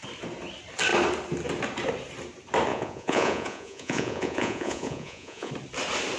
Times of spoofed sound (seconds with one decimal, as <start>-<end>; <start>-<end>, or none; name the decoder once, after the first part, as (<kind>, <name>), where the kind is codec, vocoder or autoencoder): 2.7-5.5 (vocoder, Vocos)